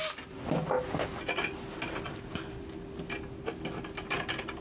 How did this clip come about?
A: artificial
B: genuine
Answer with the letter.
B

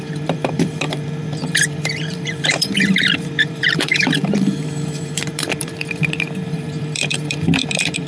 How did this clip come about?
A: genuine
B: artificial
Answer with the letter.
B